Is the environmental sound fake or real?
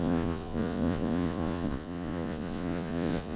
fake